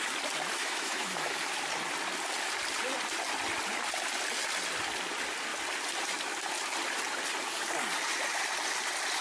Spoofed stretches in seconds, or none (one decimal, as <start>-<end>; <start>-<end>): 0.6-1.4